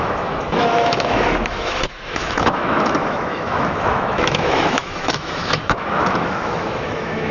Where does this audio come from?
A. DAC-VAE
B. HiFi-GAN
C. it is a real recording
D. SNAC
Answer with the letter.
A